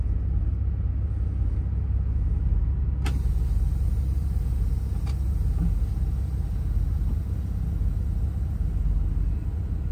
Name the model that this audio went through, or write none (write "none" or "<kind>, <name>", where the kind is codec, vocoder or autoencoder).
none